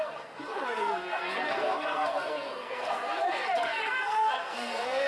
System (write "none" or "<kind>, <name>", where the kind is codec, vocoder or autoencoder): codec, SNAC